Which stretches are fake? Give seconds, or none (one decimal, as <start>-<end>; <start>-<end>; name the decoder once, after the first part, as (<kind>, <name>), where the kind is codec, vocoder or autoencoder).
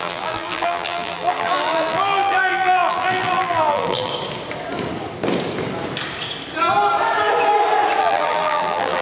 0.0-4.1 (vocoder, BigVGAN v2); 8.0-9.0